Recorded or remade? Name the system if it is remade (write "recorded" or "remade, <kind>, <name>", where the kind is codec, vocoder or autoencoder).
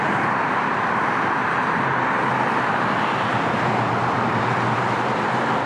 remade, vocoder, BigVGAN v2